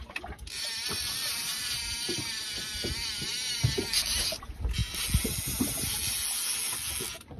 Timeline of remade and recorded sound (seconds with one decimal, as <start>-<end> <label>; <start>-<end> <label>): 0.0-7.4 recorded